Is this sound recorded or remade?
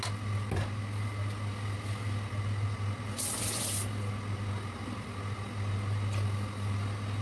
recorded